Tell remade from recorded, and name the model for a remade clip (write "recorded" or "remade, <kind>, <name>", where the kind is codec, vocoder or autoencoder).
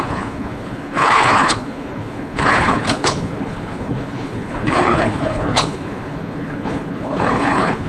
remade, codec, HILCodec